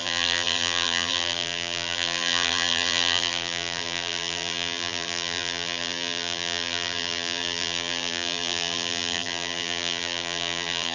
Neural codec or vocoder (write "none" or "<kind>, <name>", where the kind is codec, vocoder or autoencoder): vocoder, BigVGAN v2